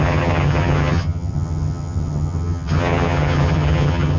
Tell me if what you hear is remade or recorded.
remade